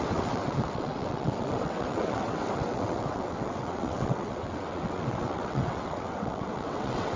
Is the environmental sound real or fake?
fake